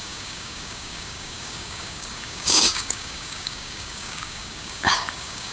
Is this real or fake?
fake